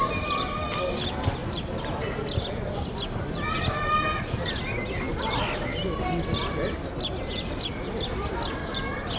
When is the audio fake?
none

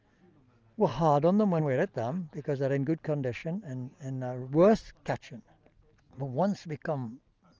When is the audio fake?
none

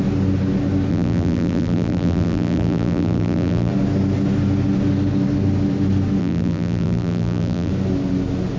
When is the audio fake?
0.9-3.7; 6.2-7.7

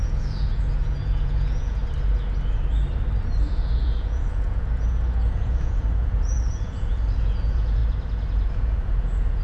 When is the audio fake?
0.0-1.8; 3.5-7.8; 8.5-9.4

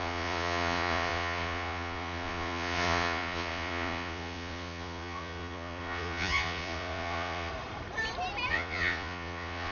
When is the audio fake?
0.0-7.5; 8.5-9.7

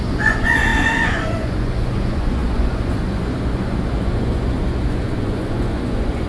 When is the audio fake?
0.0-6.3

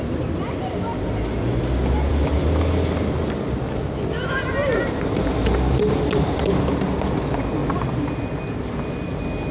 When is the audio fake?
none

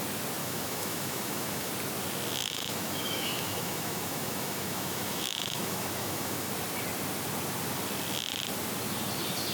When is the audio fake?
0.4-1.7; 2.4-6.5